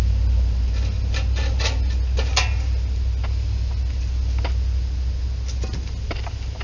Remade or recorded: recorded